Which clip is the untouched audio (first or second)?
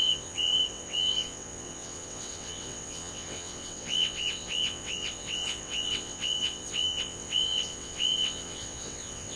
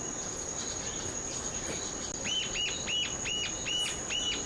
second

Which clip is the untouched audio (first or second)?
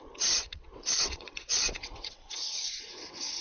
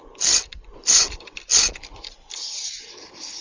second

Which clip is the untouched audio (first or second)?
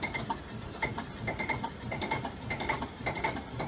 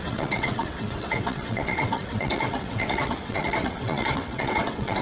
first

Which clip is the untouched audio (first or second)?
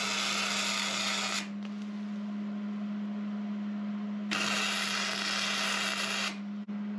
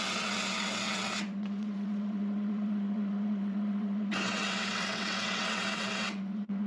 first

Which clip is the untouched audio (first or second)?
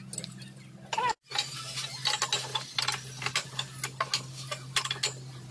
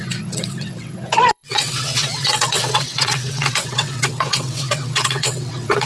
first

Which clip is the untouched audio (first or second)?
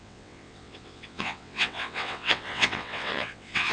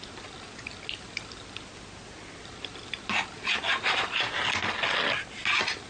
second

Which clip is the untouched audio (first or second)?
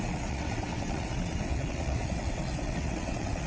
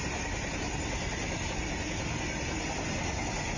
second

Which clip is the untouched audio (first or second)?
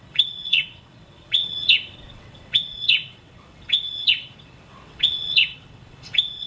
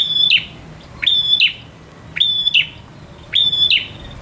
second